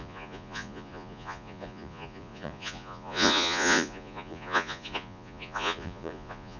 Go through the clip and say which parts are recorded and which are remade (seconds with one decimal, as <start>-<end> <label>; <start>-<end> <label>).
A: 0.0-6.6 remade